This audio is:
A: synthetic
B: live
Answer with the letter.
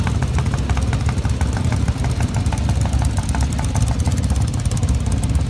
B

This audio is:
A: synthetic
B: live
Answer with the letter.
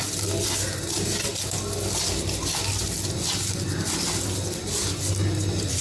B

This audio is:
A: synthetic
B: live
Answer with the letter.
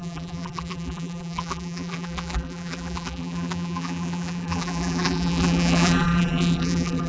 A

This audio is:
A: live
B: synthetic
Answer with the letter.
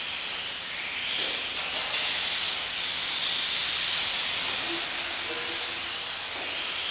A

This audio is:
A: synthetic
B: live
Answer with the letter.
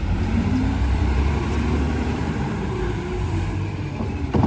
A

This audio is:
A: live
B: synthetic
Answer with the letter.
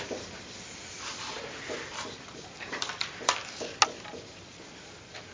A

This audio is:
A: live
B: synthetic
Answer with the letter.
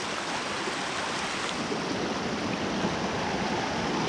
A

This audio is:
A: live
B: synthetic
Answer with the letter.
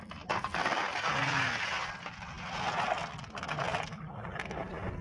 A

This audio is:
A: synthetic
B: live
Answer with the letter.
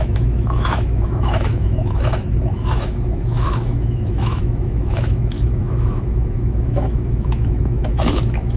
A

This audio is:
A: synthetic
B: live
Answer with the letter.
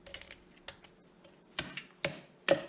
B